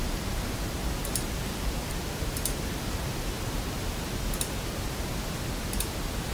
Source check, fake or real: real